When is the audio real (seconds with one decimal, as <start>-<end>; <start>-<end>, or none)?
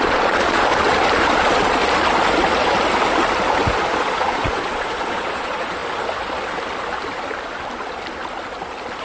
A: 0.7-1.4; 1.8-3.9; 5.8-9.0